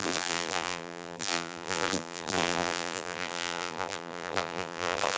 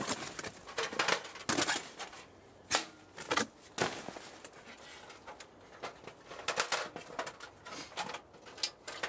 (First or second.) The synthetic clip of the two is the first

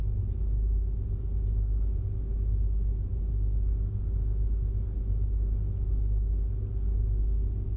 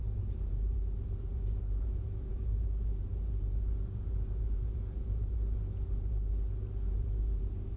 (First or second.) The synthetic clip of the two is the second